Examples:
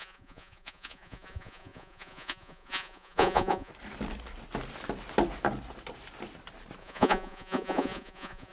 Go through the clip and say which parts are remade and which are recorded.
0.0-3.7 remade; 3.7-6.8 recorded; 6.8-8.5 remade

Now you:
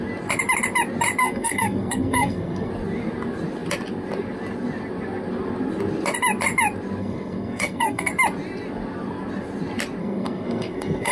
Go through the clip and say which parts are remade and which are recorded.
0.0-1.2 recorded; 1.2-2.7 remade; 2.7-7.0 recorded; 7.0-8.1 remade; 8.1-10.0 recorded; 10.0-11.1 remade